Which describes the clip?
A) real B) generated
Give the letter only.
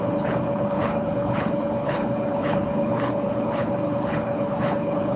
B